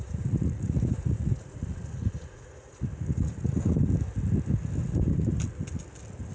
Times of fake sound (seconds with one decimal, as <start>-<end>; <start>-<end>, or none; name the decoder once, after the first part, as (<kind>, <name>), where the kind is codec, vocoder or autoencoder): 0.0-3.7 (vocoder, Vocos); 4.8-5.4